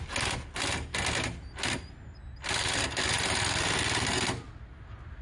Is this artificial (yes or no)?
no